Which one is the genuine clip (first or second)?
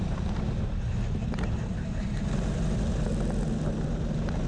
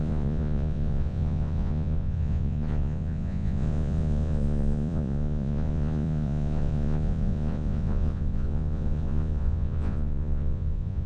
first